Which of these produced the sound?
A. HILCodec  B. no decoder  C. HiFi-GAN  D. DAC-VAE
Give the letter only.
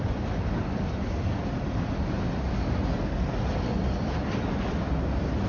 B